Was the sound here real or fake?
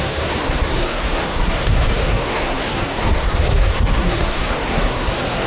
fake